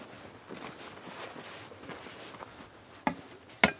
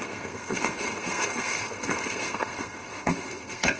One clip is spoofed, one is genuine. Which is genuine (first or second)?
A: first